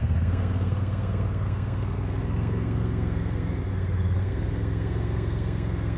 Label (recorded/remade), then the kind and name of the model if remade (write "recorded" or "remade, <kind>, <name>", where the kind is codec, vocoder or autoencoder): remade, codec, SNAC